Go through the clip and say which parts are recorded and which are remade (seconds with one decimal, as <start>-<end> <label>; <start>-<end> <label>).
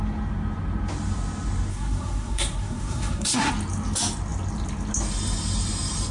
0.0-1.7 recorded; 1.7-3.5 remade; 3.5-6.1 recorded